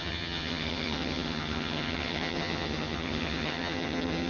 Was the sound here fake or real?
fake